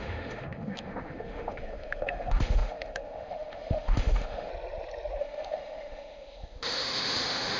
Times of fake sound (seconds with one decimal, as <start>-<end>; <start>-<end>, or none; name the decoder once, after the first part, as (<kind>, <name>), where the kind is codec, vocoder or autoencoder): 0.0-4.5 (autoencoder, DAC-VAE); 5.2-7.6